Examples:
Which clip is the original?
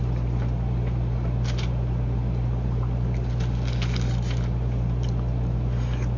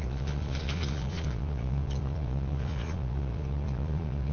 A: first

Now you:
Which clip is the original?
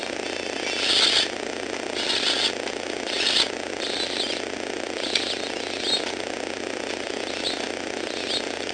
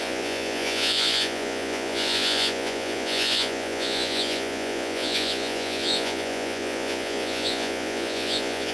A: first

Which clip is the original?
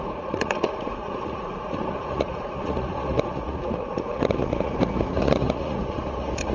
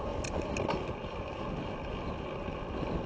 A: second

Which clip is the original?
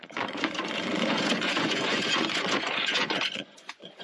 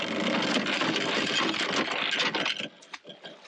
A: second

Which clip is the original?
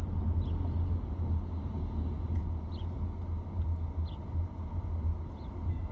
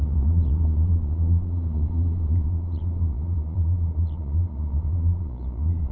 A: first